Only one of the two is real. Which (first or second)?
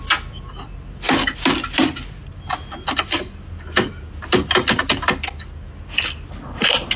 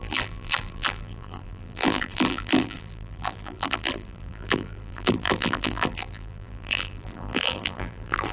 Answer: first